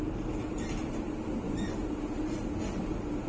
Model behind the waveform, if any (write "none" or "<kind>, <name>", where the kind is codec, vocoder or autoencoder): none